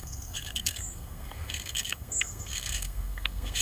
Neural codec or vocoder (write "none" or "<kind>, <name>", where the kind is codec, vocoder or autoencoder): codec, SNAC